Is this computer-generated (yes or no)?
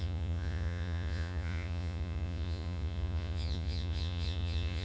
yes